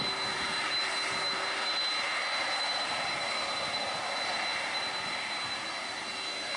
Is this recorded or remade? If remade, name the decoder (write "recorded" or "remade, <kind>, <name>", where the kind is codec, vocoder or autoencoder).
recorded